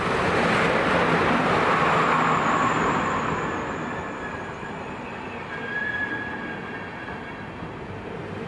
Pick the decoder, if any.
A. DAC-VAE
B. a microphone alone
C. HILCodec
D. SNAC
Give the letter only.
B